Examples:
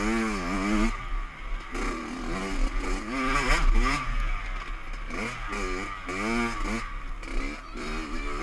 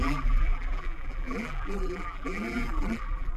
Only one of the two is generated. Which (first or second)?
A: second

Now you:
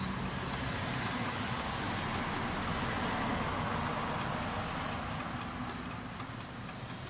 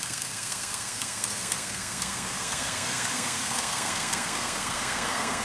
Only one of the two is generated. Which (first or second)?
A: second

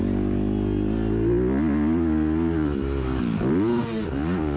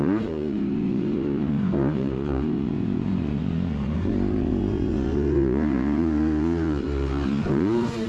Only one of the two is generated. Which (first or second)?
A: second